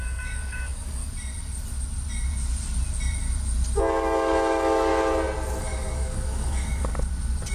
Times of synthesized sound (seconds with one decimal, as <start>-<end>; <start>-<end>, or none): 0.0-1.0; 3.8-4.9; 5.6-6.9